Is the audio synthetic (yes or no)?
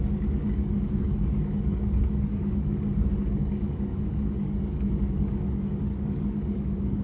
yes